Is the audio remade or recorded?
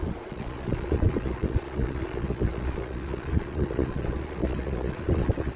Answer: remade